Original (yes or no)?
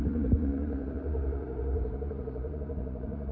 no